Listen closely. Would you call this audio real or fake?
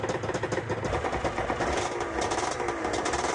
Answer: real